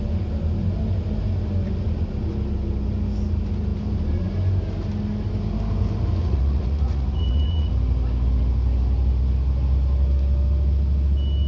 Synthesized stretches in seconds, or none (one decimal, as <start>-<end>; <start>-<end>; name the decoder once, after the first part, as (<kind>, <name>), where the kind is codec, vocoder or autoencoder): 6.2-7.7 (vocoder, Vocos)